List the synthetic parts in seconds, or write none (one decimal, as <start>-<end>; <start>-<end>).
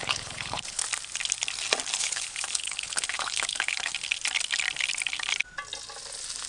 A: 0.0-0.8; 2.0-3.9